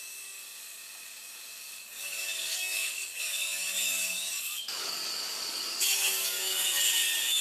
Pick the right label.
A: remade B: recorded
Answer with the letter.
A